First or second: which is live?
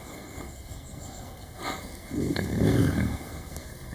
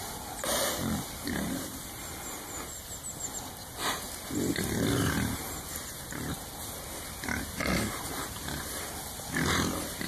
second